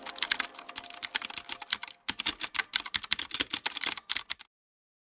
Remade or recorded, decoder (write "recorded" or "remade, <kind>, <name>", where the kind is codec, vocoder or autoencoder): recorded